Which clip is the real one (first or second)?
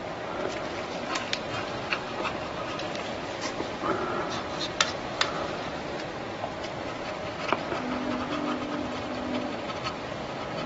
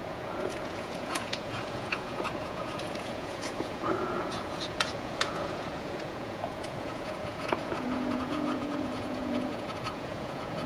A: first